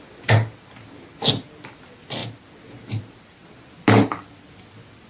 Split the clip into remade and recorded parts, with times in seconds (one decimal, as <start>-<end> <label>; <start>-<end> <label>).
0.0-5.1 recorded